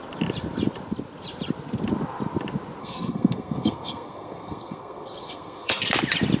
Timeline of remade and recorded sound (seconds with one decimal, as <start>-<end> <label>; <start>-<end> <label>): 0.0-2.8 recorded; 2.8-5.8 remade; 5.8-6.4 recorded